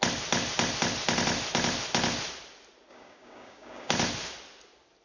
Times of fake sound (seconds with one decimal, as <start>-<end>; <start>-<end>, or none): 2.9-3.9